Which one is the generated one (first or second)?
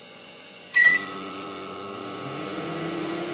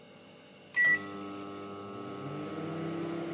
first